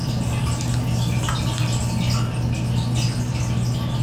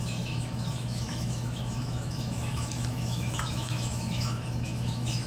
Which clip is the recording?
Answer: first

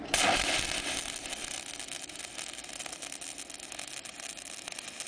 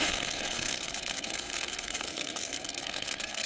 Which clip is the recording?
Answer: first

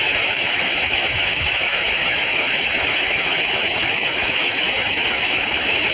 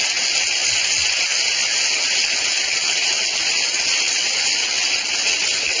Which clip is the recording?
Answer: second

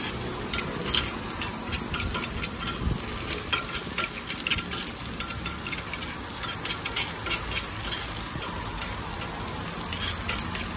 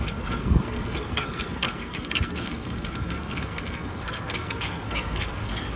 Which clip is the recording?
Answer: first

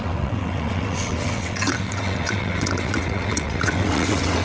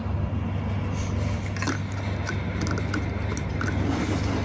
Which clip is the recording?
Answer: second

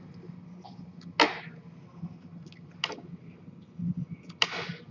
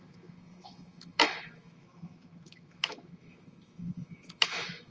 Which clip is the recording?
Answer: first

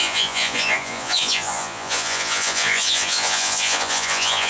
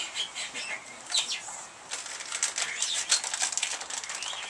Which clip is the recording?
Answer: second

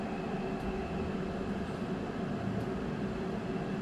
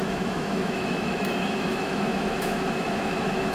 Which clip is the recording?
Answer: first